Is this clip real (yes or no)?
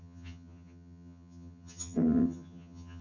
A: no